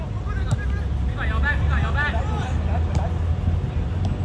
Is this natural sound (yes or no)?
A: yes